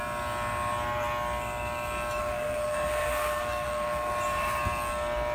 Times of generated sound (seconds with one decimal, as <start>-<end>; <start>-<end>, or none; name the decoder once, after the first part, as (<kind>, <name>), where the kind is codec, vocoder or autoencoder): 2.2-4.1 (codec, SNAC)